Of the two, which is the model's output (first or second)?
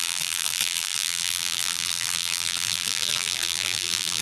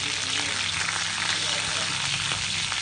first